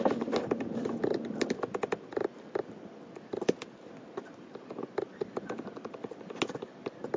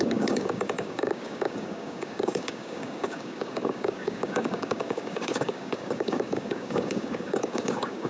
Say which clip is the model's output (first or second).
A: second